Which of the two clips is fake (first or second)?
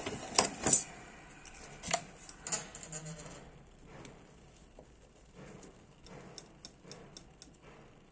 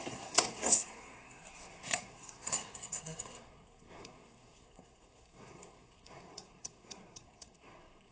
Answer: second